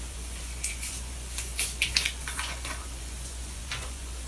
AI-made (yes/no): yes